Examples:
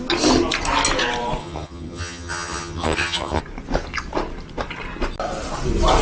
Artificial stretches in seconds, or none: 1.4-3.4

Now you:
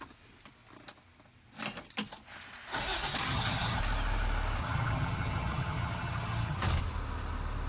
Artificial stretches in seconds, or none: 3.2-3.8; 4.6-6.6

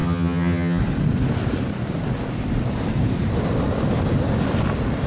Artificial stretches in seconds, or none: 0.0-0.8